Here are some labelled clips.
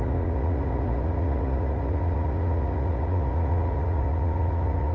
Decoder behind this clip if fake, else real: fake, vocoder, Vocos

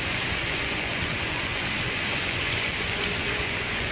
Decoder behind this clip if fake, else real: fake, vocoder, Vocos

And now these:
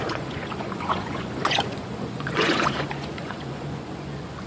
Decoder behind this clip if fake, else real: fake, vocoder, Vocos